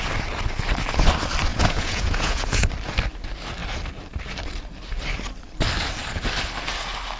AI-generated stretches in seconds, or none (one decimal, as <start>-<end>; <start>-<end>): 1.5-2.7